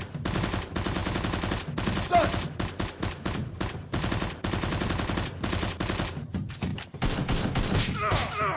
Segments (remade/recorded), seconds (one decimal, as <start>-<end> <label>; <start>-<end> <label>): 0.0-8.6 recorded